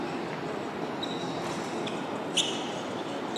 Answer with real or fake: real